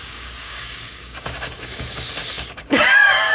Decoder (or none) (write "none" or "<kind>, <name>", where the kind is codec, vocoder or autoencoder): codec, DAC